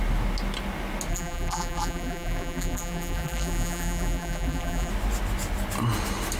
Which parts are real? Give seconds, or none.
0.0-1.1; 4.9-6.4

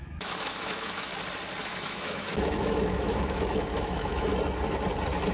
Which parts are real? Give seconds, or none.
1.1-1.6; 4.3-5.3

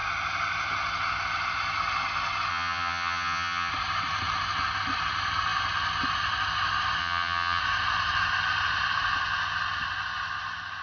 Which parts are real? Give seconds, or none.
0.0-2.5; 3.7-7.0; 7.6-10.8

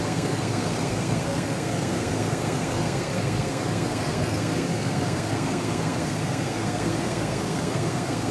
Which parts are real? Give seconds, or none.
none

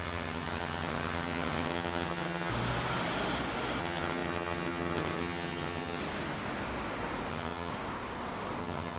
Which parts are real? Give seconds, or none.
2.5-3.8; 6.0-7.3; 7.7-8.6

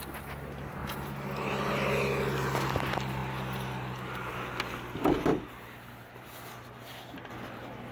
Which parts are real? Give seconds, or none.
0.0-0.8; 1.7-7.9